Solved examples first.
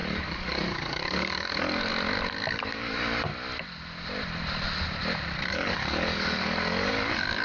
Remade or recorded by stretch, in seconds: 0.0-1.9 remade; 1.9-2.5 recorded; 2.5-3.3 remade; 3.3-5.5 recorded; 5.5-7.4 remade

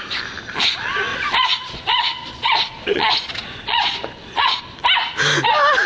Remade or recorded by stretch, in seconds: 0.0-1.1 recorded; 1.1-4.6 remade; 4.6-5.9 recorded

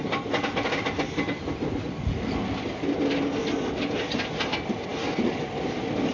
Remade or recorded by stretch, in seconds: 0.0-6.1 recorded

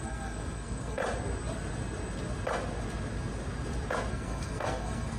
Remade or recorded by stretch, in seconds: 0.0-1.0 remade; 1.0-4.1 recorded; 4.1-5.2 remade